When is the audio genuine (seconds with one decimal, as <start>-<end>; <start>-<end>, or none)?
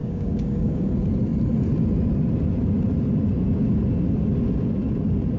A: 0.9-5.4